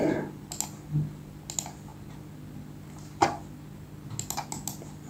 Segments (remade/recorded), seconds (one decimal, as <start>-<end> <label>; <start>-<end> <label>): 0.0-5.1 recorded